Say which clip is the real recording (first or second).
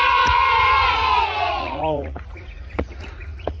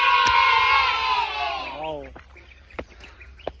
second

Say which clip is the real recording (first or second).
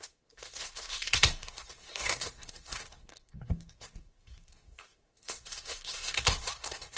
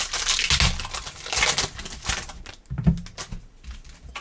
second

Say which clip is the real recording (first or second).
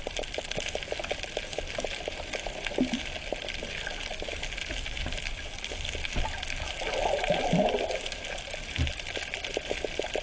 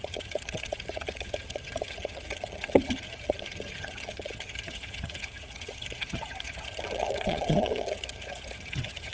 first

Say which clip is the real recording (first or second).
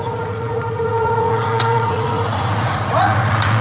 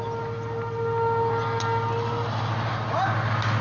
second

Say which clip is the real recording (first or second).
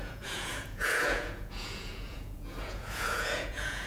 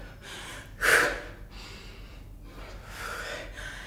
second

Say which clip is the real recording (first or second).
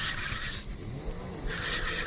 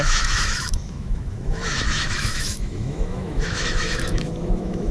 first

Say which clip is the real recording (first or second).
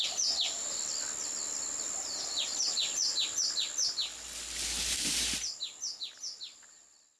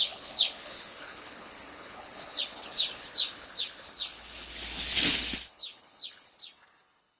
first